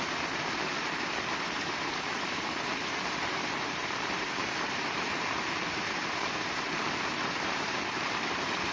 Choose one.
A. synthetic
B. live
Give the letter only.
A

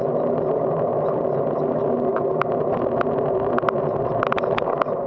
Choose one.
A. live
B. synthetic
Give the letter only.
A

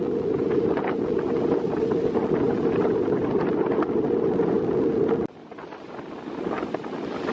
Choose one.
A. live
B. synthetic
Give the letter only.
A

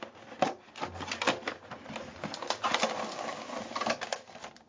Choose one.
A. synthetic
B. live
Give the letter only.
B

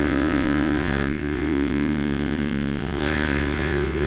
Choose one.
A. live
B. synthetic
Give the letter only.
B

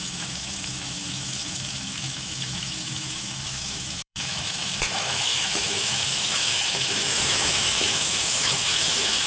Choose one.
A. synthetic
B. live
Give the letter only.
A